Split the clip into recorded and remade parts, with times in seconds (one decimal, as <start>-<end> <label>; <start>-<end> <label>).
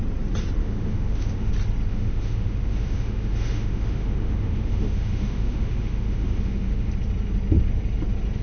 0.0-0.6 recorded; 0.6-1.5 remade; 1.5-1.9 recorded; 1.9-6.9 remade; 6.9-8.4 recorded